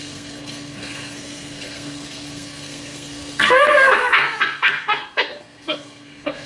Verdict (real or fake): fake